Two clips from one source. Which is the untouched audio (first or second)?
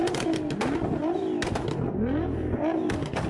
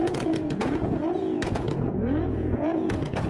first